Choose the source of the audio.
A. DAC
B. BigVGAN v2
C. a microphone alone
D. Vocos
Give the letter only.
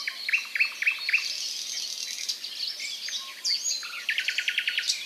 C